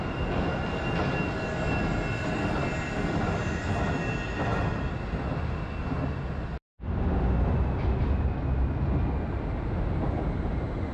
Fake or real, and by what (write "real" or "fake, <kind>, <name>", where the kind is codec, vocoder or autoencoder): real